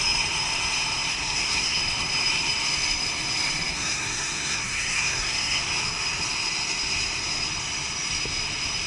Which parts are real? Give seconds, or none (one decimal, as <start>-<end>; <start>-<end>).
0.0-1.1; 1.8-3.7; 5.6-8.9